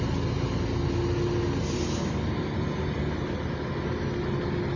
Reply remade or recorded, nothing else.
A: recorded